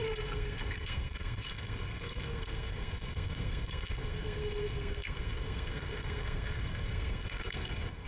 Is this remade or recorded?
remade